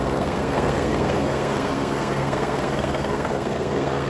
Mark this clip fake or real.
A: fake